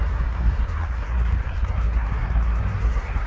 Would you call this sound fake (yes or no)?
yes